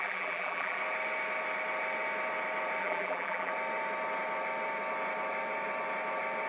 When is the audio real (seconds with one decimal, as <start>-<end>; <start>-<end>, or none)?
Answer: 0.8-2.8; 3.5-6.5